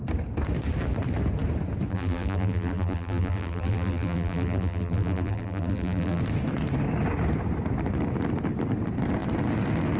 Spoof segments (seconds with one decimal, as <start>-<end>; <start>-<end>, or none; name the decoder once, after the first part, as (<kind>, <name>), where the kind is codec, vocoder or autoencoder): 1.9-6.2 (vocoder, BigVGAN v2)